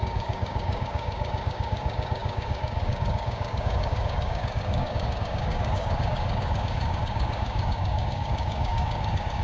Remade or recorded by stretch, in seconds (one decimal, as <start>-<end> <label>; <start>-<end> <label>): 0.0-9.4 remade